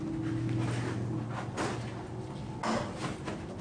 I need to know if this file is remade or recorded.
recorded